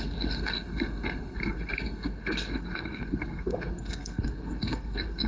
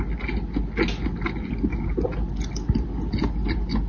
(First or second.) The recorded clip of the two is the second